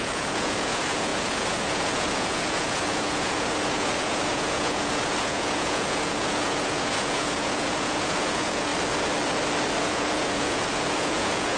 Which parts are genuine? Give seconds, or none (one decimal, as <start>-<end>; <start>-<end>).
8.7-9.8